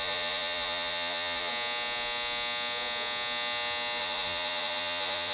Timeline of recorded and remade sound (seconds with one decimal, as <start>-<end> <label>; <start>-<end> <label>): 0.0-1.5 remade; 1.5-4.0 recorded; 4.0-5.3 remade